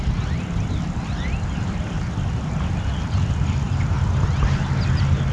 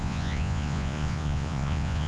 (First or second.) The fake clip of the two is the second